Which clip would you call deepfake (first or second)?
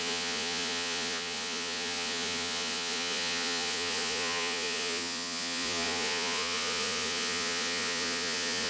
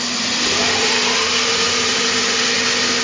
first